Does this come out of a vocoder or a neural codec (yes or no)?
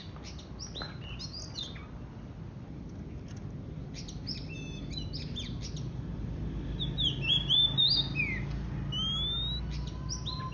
no